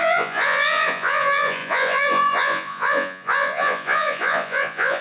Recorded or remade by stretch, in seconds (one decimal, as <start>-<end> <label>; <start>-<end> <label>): 0.0-5.0 remade